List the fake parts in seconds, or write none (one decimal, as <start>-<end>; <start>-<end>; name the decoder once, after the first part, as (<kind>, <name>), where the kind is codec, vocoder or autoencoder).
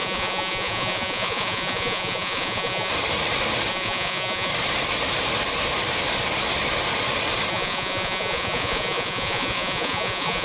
0.0-2.9 (vocoder, Vocos); 3.7-4.5; 7.5-10.4